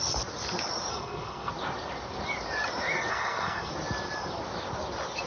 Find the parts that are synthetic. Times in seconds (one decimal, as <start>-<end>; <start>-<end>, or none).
0.9-1.5; 3.1-3.7